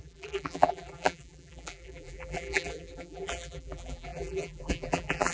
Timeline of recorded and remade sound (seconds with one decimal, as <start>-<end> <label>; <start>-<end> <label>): 0.0-5.3 remade